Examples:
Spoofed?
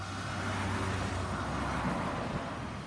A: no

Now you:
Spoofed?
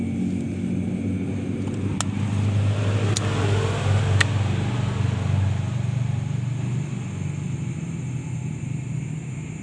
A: no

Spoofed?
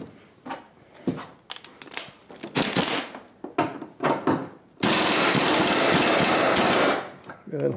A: no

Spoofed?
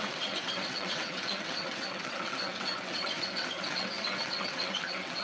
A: yes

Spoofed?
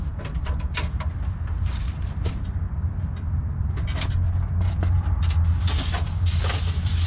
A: no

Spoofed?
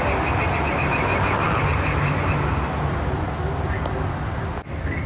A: no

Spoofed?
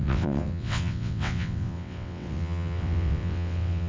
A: yes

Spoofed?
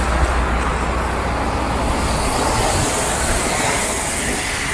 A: no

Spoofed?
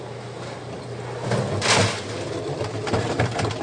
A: no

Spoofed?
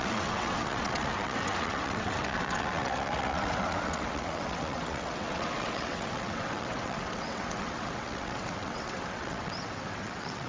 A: yes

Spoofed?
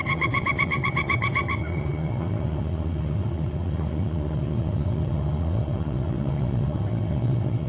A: yes